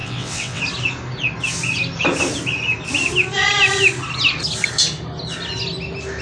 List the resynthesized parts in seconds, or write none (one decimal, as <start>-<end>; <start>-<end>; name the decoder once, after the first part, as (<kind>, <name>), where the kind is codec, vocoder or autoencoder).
0.0-0.6 (vocoder, WaveNeXt)